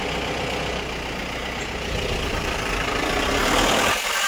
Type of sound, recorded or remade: recorded